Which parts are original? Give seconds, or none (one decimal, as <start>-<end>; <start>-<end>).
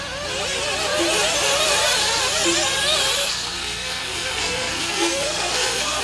0.0-3.2